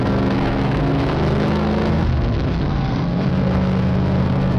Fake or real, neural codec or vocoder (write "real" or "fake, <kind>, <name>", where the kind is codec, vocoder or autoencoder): fake, codec, SNAC